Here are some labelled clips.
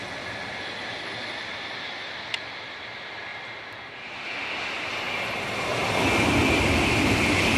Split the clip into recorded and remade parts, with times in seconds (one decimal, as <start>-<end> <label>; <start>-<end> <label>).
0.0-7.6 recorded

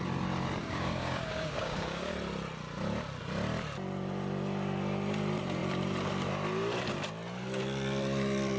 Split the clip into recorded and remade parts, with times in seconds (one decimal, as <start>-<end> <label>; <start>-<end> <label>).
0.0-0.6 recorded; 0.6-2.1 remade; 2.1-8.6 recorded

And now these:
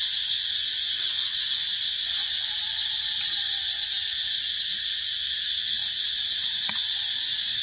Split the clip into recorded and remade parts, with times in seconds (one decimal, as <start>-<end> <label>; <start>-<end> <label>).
0.0-0.4 recorded; 0.4-2.5 remade; 2.5-5.8 recorded; 5.8-7.6 remade

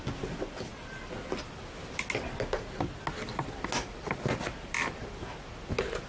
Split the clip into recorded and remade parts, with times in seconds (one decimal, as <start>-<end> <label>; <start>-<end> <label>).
0.0-6.1 recorded

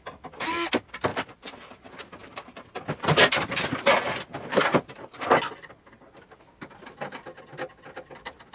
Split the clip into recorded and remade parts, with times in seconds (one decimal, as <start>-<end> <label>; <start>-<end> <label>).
0.0-1.1 recorded; 1.1-1.8 remade; 1.8-2.2 recorded; 2.2-5.1 remade; 5.1-8.5 recorded